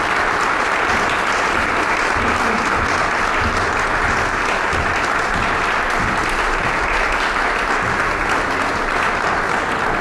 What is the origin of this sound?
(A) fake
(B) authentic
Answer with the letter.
B